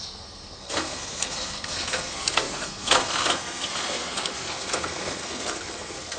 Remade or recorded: remade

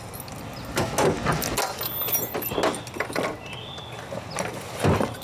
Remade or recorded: recorded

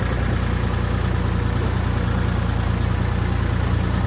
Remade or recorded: recorded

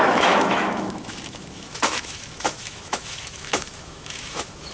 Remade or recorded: remade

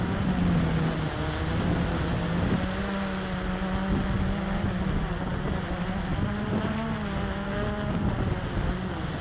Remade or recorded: recorded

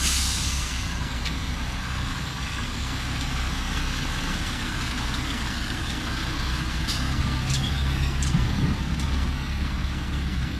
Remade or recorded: remade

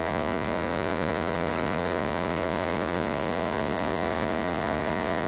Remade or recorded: remade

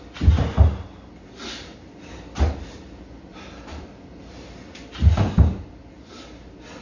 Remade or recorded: recorded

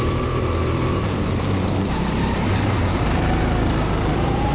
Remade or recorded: remade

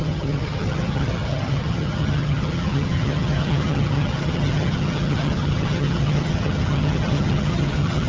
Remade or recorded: remade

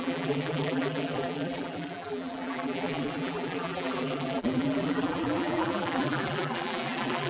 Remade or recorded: remade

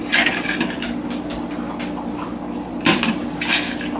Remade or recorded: recorded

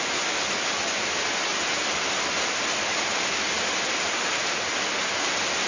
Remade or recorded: recorded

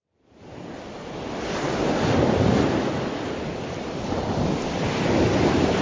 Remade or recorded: recorded